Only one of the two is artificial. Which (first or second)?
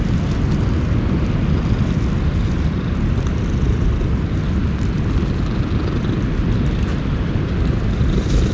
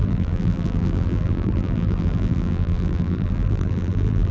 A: second